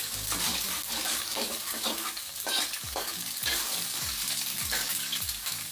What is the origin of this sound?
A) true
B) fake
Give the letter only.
B